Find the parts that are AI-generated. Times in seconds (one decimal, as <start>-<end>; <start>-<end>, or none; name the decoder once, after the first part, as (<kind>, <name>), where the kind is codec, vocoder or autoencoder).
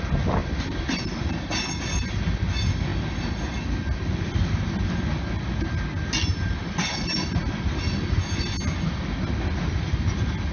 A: 0.4-1.8 (vocoder, BigVGAN v2)